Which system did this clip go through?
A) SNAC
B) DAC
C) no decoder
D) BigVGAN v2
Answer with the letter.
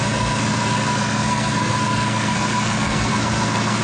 A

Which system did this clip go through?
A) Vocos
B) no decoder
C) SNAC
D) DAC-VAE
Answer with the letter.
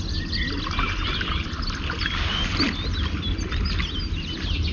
B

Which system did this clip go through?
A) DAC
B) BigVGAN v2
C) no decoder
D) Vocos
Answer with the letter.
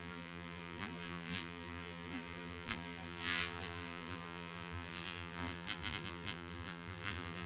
B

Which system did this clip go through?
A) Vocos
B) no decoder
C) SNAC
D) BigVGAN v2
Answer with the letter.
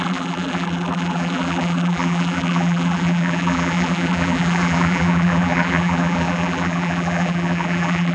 D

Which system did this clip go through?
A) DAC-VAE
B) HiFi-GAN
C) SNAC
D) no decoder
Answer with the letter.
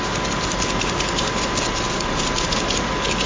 D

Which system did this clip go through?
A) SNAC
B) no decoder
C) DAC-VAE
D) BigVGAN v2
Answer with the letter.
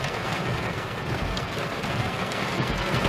A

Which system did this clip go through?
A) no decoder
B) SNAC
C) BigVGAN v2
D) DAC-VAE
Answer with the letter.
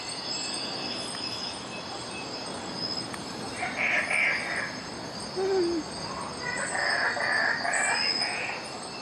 A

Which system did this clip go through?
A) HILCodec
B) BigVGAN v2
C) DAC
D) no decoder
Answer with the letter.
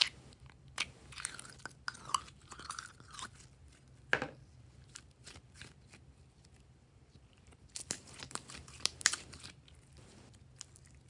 D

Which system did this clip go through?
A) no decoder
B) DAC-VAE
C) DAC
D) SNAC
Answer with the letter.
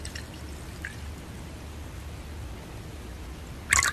A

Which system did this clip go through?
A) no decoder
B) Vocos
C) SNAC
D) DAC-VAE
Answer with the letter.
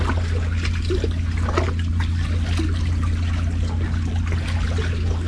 A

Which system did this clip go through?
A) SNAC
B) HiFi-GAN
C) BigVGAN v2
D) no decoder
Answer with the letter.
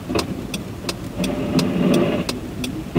D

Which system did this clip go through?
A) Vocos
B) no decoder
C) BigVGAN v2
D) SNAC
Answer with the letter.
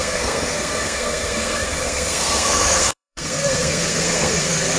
D